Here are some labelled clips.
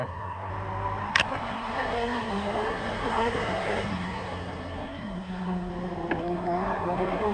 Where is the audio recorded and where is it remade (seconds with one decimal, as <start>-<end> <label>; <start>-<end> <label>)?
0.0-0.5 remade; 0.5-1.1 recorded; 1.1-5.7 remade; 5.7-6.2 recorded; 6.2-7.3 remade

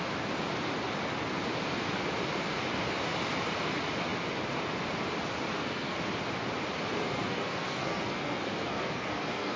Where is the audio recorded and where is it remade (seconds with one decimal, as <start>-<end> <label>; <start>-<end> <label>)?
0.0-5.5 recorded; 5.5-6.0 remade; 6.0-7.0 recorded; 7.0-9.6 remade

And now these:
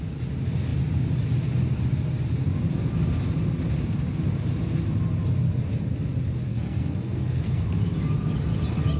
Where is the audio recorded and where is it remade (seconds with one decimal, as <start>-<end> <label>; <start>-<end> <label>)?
0.0-6.5 recorded; 6.5-7.7 remade; 7.7-9.0 recorded

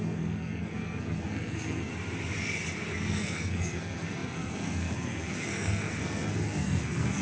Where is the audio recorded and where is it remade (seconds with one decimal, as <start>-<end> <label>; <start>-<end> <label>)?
0.0-1.9 remade; 1.9-2.9 recorded; 2.9-7.2 remade